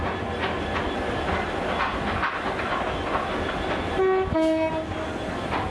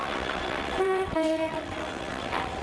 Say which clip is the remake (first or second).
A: second